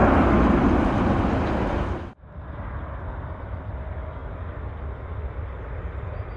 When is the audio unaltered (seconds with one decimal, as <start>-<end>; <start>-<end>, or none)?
0.0-6.4